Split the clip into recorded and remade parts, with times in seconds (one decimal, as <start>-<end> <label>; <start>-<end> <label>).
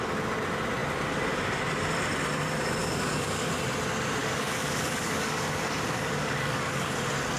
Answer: 0.0-2.8 recorded; 2.8-3.5 remade; 3.5-4.2 recorded; 4.2-6.9 remade; 6.9-7.4 recorded